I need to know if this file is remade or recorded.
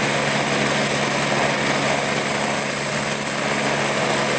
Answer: recorded